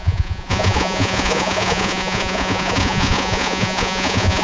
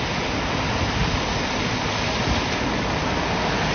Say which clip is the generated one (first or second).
first